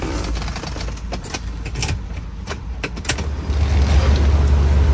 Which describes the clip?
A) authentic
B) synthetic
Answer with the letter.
A